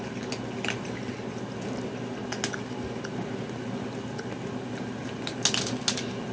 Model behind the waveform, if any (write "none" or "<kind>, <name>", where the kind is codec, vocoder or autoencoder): none